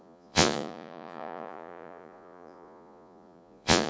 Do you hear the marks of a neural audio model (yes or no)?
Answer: yes